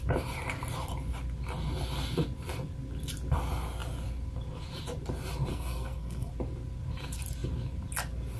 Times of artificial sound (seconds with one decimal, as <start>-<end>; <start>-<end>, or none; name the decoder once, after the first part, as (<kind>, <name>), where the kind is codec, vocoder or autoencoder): 5.5-6.3 (codec, SNAC)